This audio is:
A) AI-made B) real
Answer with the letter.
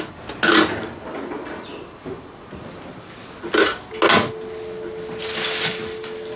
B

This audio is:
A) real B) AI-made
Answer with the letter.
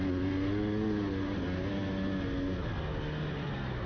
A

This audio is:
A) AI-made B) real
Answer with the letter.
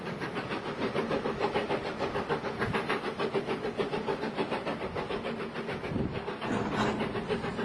B